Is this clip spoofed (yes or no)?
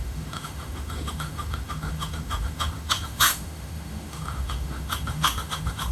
yes